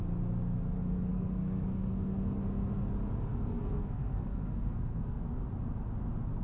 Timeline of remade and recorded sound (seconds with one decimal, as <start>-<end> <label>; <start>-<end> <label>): 0.0-1.1 recorded; 1.1-2.4 remade; 2.4-3.3 recorded; 3.3-5.2 remade; 5.2-6.4 recorded